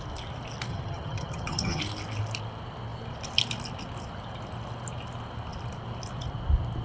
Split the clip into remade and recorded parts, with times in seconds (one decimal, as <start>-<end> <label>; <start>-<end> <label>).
0.0-0.7 recorded; 0.7-1.8 remade; 1.8-6.8 recorded